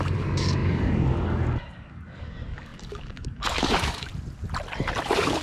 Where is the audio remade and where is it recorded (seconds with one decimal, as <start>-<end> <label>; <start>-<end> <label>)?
0.0-4.1 remade; 4.1-5.0 recorded; 5.0-5.4 remade